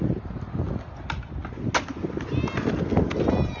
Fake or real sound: real